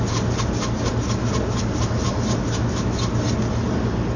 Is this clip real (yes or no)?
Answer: yes